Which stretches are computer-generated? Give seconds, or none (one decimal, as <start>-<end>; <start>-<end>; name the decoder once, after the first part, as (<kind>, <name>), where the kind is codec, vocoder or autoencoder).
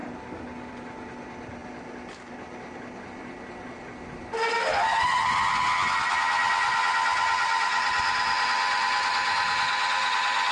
none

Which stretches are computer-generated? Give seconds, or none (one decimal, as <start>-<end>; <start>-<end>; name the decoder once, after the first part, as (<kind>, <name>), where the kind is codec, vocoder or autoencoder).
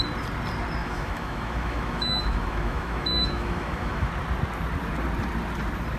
0.8-4.1 (autoencoder, DAC-VAE)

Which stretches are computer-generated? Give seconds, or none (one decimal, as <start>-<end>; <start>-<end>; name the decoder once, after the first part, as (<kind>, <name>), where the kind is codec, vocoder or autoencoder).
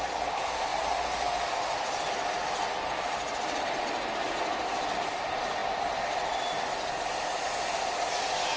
none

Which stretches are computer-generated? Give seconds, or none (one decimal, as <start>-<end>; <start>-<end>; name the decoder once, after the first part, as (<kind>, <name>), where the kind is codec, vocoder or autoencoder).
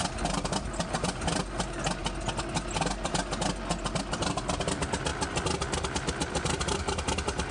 none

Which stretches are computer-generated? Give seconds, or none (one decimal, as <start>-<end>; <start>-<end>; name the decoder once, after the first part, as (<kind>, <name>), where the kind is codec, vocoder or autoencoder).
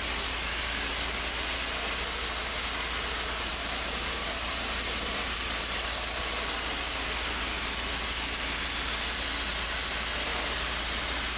3.5-6.2 (vocoder, BigVGAN v2)